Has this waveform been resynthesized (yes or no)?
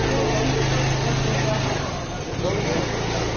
no